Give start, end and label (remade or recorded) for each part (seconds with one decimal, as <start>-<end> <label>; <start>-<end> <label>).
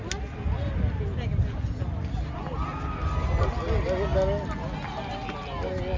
0.0-6.0 recorded